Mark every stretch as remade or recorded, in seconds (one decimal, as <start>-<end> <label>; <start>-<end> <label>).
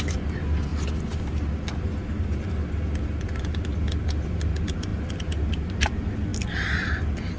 0.0-7.4 recorded